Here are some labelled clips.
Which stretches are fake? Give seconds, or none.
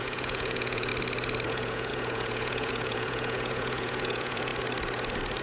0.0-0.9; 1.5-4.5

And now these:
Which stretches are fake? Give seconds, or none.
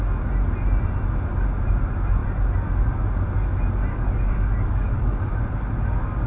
3.9-5.3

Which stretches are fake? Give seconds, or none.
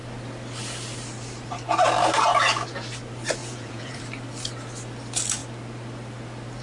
3.4-4.0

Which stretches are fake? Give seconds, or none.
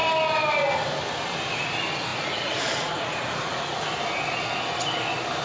2.1-3.9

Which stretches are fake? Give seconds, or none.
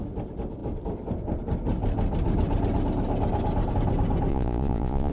4.3-5.1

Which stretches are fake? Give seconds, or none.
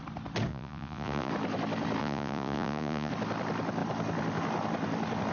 0.5-1.3; 2.0-3.1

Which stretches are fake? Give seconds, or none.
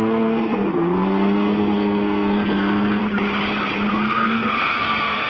0.0-3.0; 3.9-5.3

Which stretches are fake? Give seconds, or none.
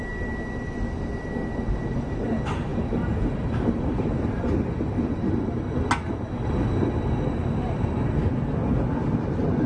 2.7-5.3